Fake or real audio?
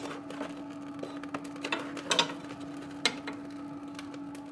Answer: real